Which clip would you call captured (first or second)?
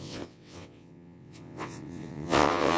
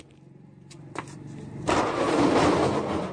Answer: second